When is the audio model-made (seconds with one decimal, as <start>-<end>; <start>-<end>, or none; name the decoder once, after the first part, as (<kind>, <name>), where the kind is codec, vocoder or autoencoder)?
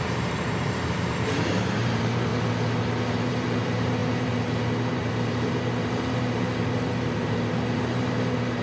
0.0-2.3 (vocoder, BigVGAN v2); 3.2-8.6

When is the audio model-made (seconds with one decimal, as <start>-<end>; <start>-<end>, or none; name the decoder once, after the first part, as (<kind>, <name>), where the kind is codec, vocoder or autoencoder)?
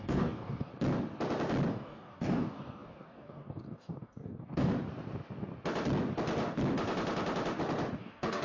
0.0-0.7 (codec, DAC); 1.7-4.7; 8.0-8.4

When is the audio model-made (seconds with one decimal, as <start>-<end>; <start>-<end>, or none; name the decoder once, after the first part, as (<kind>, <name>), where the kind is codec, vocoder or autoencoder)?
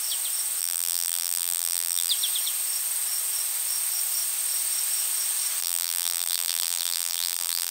0.6-2.1 (vocoder, BigVGAN v2); 5.6-7.7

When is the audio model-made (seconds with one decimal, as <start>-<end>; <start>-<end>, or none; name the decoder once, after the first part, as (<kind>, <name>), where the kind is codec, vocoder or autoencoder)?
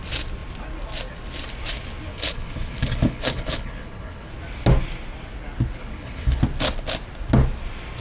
2.1-4.3 (codec, HILCodec); 5.8-6.4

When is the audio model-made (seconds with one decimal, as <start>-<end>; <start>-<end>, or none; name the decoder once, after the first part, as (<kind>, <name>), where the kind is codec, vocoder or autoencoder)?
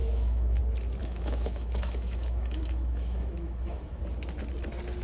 0.0-0.6 (autoencoder, DAC-VAE); 1.0-4.0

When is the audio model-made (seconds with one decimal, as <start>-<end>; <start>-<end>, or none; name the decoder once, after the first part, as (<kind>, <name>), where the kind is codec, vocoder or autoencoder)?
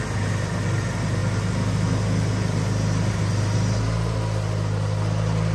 none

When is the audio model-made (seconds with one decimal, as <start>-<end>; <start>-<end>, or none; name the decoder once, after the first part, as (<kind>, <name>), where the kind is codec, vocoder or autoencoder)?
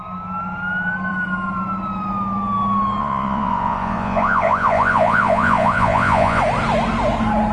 3.0-6.4 (vocoder, Vocos)